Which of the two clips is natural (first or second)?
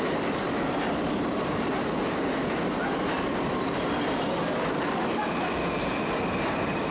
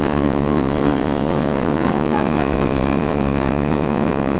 first